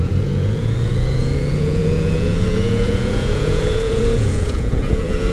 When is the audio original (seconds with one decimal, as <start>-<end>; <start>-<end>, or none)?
none